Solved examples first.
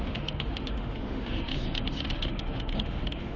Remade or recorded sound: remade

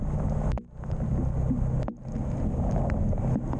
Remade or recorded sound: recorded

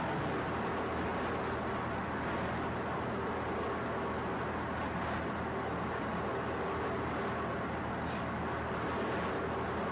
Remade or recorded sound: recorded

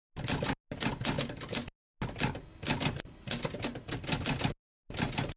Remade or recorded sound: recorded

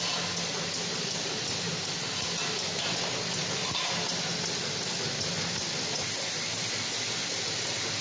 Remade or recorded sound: recorded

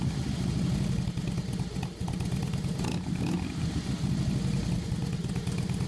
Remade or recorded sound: recorded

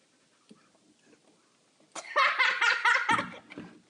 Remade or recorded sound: recorded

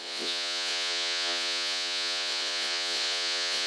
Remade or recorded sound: remade